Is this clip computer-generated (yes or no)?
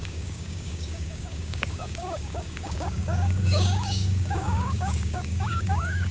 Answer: yes